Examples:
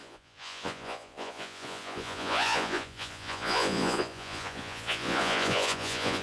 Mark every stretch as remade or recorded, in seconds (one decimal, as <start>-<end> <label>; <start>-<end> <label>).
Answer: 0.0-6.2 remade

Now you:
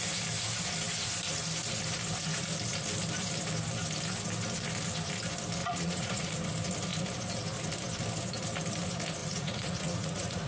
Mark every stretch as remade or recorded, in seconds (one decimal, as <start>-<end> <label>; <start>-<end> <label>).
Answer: 0.0-5.6 recorded; 5.6-6.3 remade; 6.3-9.2 recorded; 9.2-10.5 remade

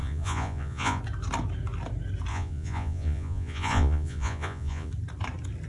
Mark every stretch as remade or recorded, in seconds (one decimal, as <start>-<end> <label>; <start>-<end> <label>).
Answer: 0.0-1.0 remade; 1.0-2.3 recorded; 2.3-4.9 remade; 4.9-5.7 recorded